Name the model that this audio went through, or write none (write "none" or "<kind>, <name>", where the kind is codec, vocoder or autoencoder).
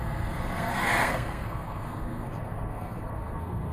codec, SNAC